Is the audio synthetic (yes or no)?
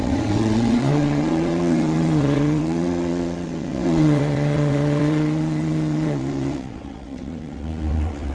yes